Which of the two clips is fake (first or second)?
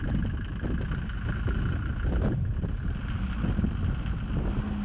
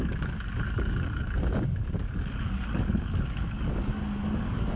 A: second